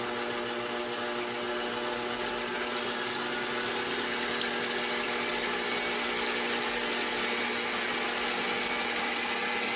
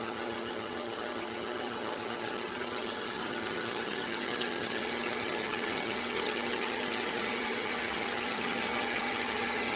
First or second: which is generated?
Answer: second